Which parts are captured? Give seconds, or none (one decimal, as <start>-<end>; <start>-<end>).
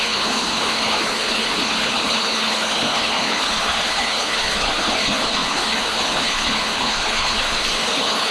none